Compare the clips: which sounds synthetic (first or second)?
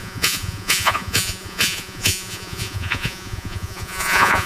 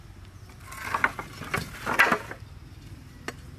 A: first